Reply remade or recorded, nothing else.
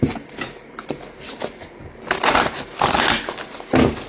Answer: recorded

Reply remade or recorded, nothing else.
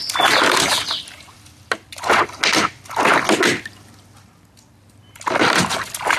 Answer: recorded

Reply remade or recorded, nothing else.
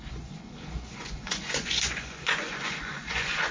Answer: remade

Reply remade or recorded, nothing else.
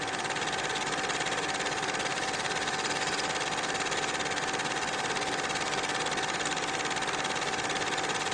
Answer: recorded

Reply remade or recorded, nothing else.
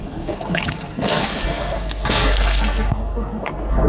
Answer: remade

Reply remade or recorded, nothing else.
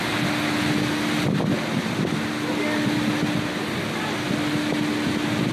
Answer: recorded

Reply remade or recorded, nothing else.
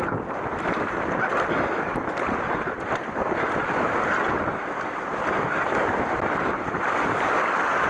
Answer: recorded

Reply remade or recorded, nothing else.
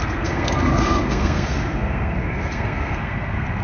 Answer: remade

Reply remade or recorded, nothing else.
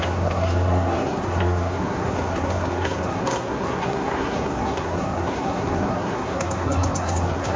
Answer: remade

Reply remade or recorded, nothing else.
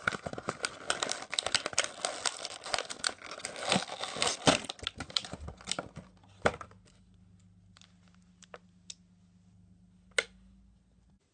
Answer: recorded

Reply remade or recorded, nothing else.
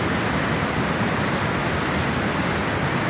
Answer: recorded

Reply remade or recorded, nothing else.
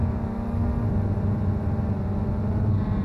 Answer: recorded